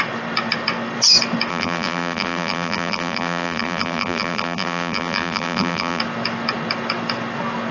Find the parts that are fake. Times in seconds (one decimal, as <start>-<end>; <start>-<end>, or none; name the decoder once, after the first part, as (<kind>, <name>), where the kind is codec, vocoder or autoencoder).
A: 1.5-6.0 (vocoder, BigVGAN v2)